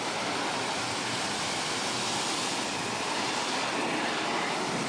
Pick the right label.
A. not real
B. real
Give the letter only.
B